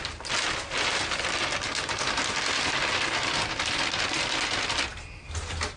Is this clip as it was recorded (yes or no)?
yes